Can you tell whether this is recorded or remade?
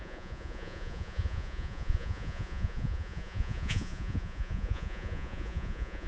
remade